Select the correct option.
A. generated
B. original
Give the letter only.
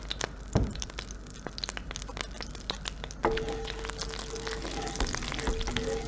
B